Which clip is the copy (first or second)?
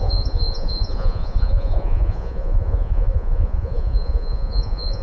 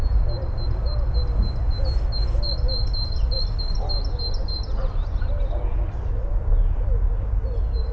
first